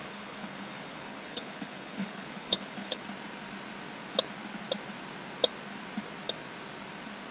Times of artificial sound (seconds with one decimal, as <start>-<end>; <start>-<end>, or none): 0.0-3.0